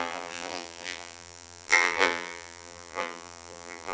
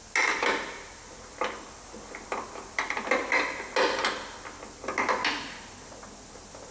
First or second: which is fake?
first